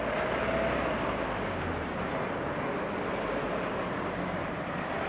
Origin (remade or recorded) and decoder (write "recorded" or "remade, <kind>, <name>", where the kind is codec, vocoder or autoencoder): recorded